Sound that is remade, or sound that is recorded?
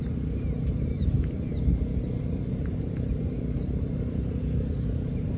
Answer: recorded